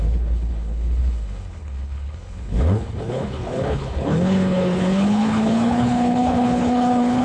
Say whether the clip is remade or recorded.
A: remade